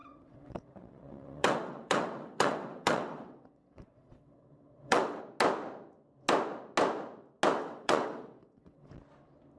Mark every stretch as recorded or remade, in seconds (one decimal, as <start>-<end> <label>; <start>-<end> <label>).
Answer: 0.0-5.2 remade; 5.2-7.6 recorded; 7.6-8.9 remade; 8.9-9.6 recorded